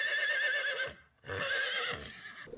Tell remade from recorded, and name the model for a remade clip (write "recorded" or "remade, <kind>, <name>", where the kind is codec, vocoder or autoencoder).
recorded